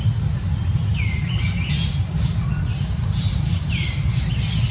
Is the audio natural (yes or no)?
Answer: yes